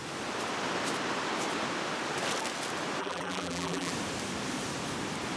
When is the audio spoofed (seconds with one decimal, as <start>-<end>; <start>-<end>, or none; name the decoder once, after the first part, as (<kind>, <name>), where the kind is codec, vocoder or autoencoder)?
3.0-3.9 (vocoder, BigVGAN v2)